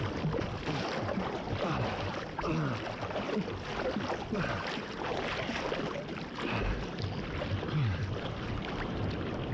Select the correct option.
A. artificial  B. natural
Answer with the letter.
B